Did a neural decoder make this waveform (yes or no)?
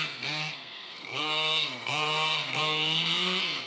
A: yes